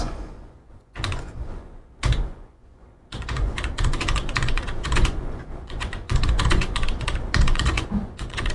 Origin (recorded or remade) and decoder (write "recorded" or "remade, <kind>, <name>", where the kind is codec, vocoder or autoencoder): remade, vocoder, Vocos